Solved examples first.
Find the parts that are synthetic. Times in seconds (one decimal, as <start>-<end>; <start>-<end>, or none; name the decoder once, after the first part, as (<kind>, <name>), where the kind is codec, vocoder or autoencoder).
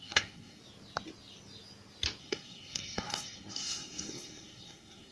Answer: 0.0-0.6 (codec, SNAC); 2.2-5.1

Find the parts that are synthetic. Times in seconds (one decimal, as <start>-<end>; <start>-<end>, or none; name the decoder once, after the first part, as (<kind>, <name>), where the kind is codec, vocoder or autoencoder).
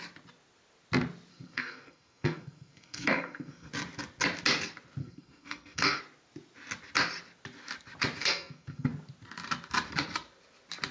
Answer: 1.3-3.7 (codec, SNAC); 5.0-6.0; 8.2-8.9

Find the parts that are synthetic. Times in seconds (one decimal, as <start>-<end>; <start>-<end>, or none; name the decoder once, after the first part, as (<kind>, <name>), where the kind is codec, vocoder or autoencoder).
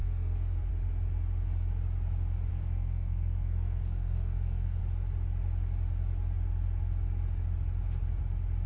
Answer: 0.0-0.7 (codec, SNAC); 2.5-4.8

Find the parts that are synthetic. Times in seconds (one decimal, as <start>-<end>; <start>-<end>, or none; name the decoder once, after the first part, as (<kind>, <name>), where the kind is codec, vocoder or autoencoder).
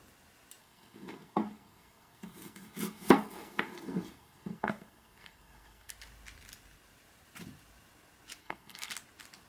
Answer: 0.6-5.9 (codec, SNAC); 8.4-8.9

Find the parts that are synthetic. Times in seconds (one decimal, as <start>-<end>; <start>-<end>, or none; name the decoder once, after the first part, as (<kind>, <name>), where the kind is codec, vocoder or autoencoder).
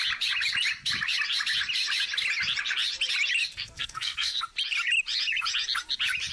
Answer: 3.5-4.4 (codec, SNAC)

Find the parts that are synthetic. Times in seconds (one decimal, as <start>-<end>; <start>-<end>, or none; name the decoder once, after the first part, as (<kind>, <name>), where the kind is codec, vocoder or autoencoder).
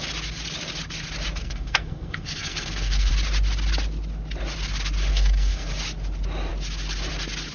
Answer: 1.4-3.1 (codec, SNAC); 5.1-5.7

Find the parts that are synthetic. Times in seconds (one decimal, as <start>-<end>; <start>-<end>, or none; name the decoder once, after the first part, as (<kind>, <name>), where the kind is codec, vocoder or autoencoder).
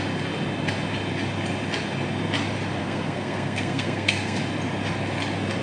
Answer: 2.8-4.4 (codec, SNAC)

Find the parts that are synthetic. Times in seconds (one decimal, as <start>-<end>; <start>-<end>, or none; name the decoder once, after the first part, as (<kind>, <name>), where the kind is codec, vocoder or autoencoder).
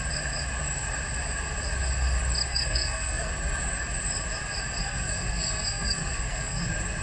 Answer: 2.5-3.3 (codec, SNAC); 4.8-6.6